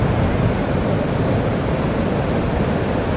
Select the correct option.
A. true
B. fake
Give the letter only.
A